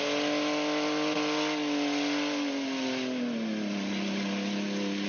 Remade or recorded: recorded